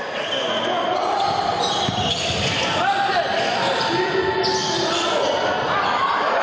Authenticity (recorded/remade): recorded